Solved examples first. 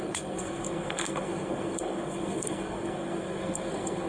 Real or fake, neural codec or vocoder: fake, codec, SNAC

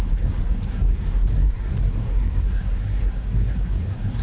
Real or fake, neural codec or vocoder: fake, codec, SNAC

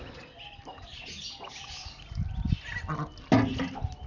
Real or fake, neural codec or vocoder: real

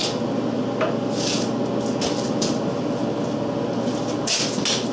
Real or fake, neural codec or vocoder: real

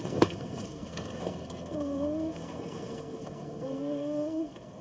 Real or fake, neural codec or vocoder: fake, codec, SNAC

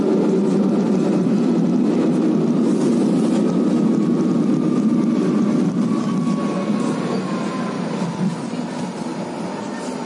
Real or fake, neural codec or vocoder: real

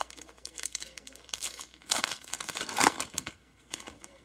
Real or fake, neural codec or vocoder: fake, codec, SNAC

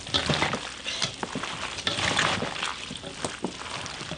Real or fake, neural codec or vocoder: real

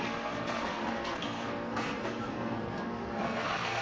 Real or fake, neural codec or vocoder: fake, codec, SNAC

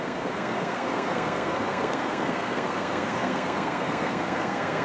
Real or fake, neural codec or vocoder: fake, codec, SNAC